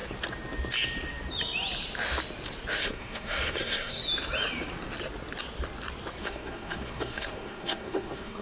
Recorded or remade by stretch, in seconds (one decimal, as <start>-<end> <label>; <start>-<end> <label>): 0.0-2.8 recorded; 2.8-4.0 remade; 4.0-6.2 recorded; 6.2-8.4 remade